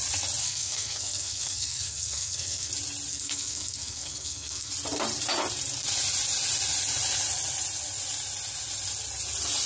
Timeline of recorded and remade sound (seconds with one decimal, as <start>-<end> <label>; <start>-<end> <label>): 0.0-0.4 recorded; 0.4-2.7 remade; 2.7-3.1 recorded; 3.1-4.7 remade; 4.7-9.7 recorded